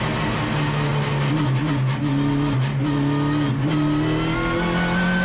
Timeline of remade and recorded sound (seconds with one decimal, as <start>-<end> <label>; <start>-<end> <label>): 0.0-5.2 recorded